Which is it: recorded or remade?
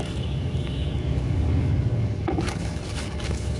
remade